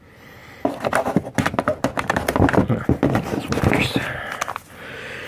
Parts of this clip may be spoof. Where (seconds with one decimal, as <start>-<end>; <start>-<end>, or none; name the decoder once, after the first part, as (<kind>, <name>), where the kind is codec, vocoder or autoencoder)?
none